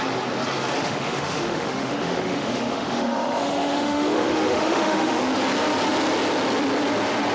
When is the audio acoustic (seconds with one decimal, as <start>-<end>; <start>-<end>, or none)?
0.0-0.8; 5.2-7.3